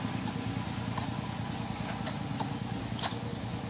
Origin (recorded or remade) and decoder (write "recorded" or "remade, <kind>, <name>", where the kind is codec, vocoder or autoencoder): recorded